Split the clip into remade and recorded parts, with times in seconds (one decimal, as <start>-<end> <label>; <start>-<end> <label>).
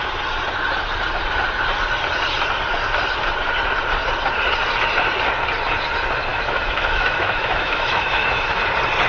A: 0.0-6.3 recorded; 6.3-8.6 remade; 8.6-9.1 recorded